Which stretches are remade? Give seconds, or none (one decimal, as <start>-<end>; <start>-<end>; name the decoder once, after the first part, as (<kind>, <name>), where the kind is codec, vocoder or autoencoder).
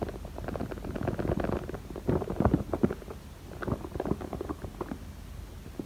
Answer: none